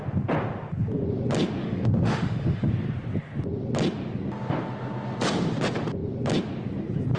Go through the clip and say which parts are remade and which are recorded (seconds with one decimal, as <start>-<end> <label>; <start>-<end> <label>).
0.0-1.6 recorded; 1.6-2.7 remade; 2.7-7.2 recorded